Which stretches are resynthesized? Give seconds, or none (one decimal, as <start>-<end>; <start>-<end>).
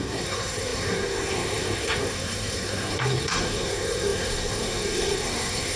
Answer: 0.0-5.8